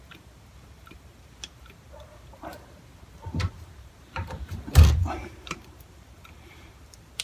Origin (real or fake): fake